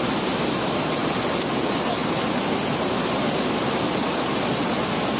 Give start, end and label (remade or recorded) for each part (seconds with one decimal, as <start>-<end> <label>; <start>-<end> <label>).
0.0-5.2 recorded